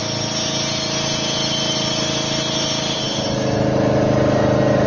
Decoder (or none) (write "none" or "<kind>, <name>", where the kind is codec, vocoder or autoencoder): none